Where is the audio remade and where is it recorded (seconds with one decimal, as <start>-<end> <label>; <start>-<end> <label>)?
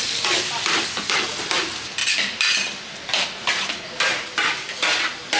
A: 0.0-2.0 recorded; 2.0-3.2 remade; 3.2-5.4 recorded